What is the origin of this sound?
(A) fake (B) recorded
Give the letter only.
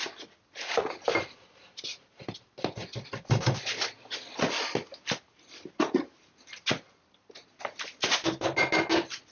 B